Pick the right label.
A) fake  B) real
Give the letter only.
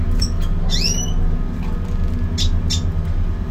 B